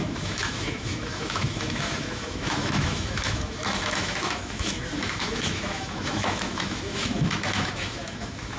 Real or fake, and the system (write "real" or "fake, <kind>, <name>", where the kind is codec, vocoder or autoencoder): fake, autoencoder, DAC-VAE